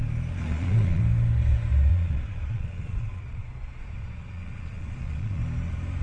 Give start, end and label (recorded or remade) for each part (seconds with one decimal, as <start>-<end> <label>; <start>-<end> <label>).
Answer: 0.0-0.4 recorded; 0.4-1.0 remade; 1.0-1.9 recorded; 1.9-5.4 remade; 5.4-6.0 recorded